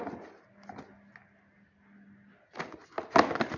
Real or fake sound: real